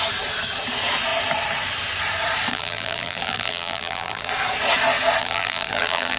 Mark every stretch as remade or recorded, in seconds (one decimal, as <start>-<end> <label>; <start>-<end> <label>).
0.0-2.5 recorded; 2.5-4.3 remade; 4.3-5.2 recorded; 5.2-6.2 remade